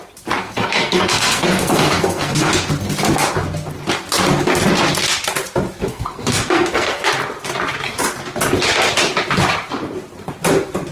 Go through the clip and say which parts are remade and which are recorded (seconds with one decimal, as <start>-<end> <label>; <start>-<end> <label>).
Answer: 0.0-0.4 recorded; 0.4-2.5 remade; 2.5-5.9 recorded; 5.9-7.1 remade; 7.1-10.9 recorded